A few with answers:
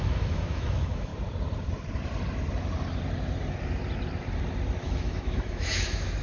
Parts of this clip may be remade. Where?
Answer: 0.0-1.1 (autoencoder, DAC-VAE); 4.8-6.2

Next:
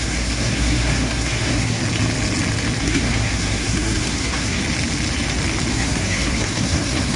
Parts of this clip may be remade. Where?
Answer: 0.0-1.8 (codec, SNAC); 2.8-4.6; 5.7-7.2

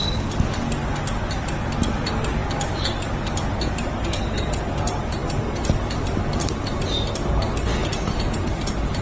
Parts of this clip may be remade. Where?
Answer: 7.8-8.5 (vocoder, Vocos)

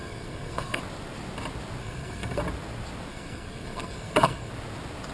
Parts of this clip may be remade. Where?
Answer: 0.0-0.8 (codec, SNAC); 1.8-2.4; 3.1-4.5

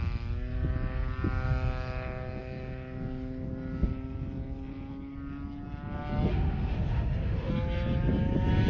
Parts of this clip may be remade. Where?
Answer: 6.3-7.5 (autoencoder, DAC-VAE)

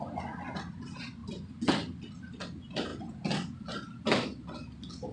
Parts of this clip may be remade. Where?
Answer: none

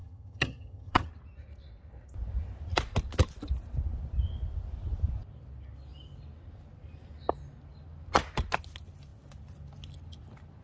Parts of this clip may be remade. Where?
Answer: 0.0-1.1 (vocoder, HiFi-GAN)